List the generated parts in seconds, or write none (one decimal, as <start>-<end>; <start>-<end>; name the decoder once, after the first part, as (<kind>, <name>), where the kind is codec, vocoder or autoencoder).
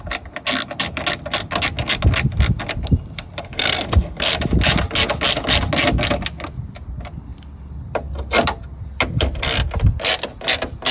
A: 3.4-4.3 (codec, SNAC)